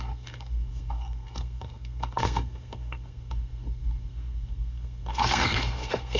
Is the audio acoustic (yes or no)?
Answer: no